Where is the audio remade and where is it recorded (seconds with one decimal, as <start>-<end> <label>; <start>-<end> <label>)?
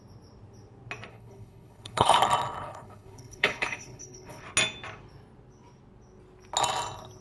0.0-1.1 recorded; 1.1-2.2 remade; 2.2-2.6 recorded; 2.6-4.4 remade; 4.4-7.2 recorded